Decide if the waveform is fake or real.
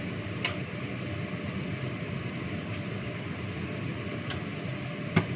fake